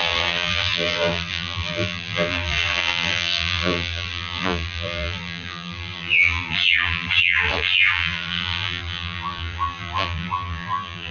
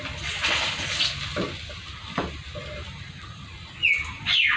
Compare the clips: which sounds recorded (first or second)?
second